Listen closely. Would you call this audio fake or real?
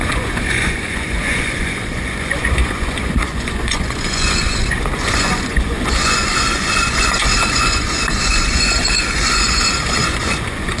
fake